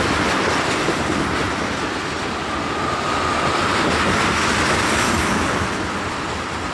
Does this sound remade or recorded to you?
recorded